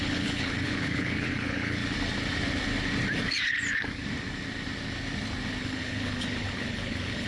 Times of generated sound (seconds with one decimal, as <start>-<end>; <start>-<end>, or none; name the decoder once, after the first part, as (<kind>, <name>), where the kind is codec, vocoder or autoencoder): 0.0-1.8 (codec, HILCodec); 5.6-7.3